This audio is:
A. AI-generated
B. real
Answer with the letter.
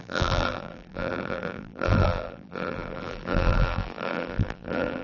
A